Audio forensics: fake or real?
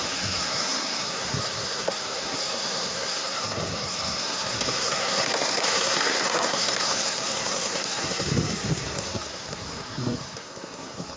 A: fake